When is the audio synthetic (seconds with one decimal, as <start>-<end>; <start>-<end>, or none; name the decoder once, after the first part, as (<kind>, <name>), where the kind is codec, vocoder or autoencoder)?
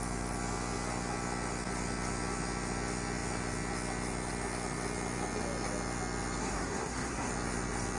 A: 6.4-7.3 (codec, SNAC)